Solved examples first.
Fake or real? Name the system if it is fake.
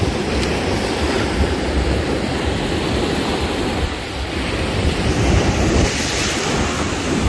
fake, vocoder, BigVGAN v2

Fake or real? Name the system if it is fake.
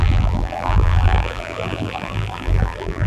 fake, vocoder, BigVGAN v2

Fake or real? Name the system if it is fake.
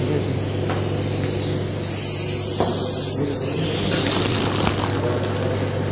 real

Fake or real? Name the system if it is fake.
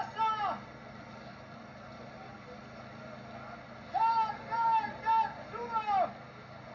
real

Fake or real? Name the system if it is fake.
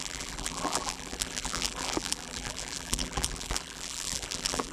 fake, vocoder, BigVGAN v2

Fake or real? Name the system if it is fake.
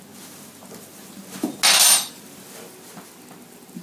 real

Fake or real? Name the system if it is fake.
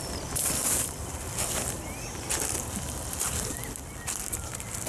real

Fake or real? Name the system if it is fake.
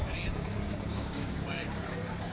fake, codec, DAC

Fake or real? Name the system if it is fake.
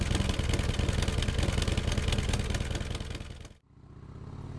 real